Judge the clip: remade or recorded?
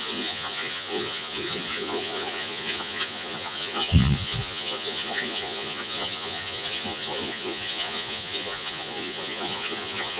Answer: remade